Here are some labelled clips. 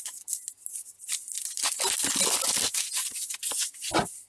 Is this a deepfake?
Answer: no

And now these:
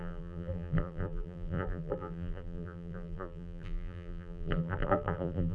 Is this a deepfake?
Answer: yes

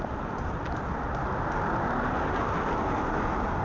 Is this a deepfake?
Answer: no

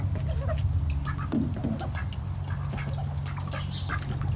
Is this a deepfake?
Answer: no